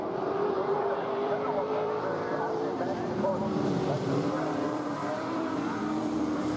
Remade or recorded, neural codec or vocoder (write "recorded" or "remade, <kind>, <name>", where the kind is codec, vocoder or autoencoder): remade, vocoder, BigVGAN v2